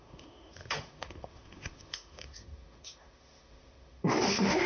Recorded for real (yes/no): no